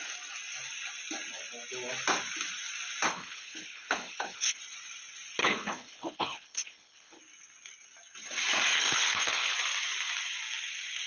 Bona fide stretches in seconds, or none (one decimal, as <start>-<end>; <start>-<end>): 0.0-3.1; 4.6-5.4; 7.2-8.7; 9.5-11.1